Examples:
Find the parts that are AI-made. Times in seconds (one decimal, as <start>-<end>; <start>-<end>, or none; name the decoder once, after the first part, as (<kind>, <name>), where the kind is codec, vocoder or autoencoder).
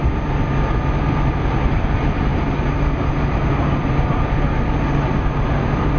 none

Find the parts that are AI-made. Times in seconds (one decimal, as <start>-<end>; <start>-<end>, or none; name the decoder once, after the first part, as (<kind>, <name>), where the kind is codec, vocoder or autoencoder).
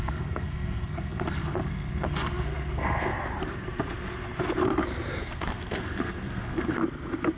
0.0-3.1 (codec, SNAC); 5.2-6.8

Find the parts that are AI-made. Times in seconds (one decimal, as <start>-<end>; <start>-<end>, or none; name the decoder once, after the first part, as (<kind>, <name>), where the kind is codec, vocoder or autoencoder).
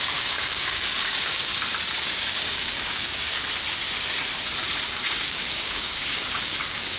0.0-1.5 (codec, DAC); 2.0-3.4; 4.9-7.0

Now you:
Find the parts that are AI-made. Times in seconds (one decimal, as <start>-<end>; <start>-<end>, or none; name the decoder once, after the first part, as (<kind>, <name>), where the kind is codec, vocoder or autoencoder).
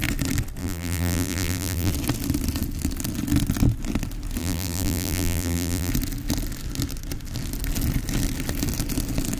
0.6-1.9 (vocoder, BigVGAN v2); 4.4-5.9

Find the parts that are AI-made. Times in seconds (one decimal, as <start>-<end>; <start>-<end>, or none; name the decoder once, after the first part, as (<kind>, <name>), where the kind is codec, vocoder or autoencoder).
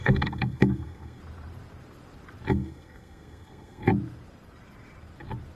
0.0-1.2 (codec, SNAC); 2.5-3.9